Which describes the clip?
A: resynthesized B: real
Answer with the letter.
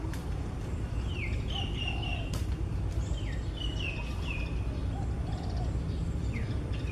B